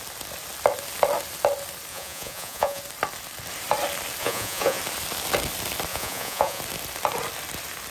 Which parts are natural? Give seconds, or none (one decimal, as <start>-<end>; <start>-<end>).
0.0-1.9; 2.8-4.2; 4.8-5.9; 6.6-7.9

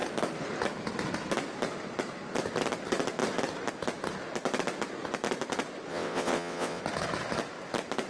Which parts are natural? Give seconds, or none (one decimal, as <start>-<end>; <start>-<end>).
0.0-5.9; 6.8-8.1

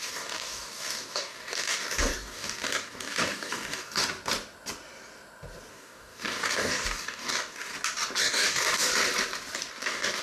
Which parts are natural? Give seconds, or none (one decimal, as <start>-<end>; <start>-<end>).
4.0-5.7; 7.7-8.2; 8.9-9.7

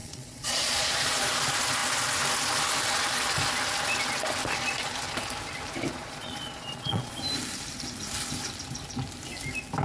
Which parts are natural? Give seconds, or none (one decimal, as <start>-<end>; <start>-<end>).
1.3-6.0; 7.2-9.8

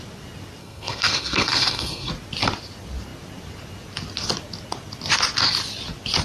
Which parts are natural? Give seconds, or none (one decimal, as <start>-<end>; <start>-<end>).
0.0-0.6; 2.1-6.2

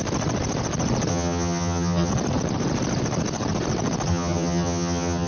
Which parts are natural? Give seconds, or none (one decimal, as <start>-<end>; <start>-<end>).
0.0-1.1; 2.1-4.1